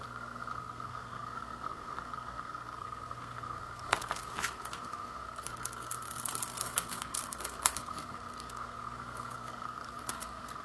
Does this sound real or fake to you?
fake